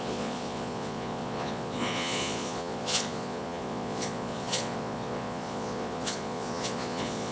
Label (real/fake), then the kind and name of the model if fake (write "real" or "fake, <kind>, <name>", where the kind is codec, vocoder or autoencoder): fake, vocoder, Vocos